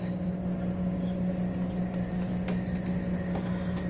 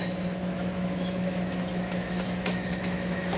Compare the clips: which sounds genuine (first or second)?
first